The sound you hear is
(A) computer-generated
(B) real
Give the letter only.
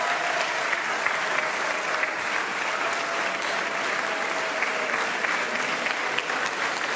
B